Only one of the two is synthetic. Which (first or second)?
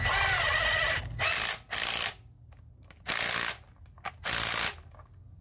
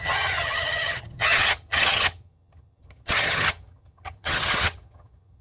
second